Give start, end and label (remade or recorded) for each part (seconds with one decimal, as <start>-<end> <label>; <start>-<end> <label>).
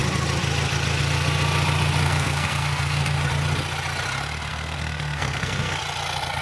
0.0-2.0 recorded; 2.0-3.2 remade; 3.2-4.5 recorded; 4.5-5.8 remade; 5.8-6.4 recorded